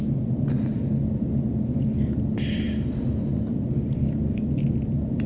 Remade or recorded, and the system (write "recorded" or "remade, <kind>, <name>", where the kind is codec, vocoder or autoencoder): recorded